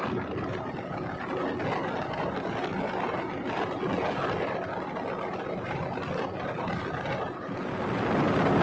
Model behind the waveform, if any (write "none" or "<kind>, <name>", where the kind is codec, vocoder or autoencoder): none